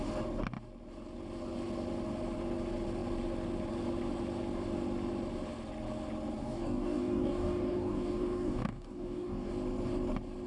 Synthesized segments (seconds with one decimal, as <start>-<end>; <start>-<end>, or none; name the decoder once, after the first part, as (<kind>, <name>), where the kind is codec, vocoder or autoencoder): 6.4-9.5 (codec, DAC)